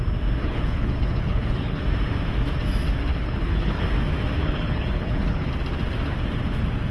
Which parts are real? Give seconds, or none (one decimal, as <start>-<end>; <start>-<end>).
0.0-0.4; 1.8-3.1; 3.8-4.4; 5.5-6.9